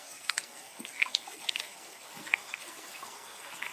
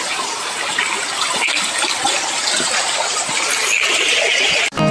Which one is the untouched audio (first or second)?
second